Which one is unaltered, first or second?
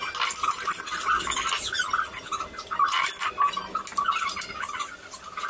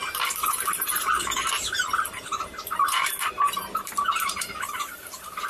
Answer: first